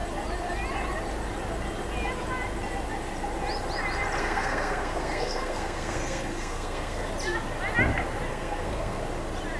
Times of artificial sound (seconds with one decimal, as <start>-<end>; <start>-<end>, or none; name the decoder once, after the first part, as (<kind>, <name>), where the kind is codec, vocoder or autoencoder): 4.2-7.1 (codec, SNAC); 8.3-9.0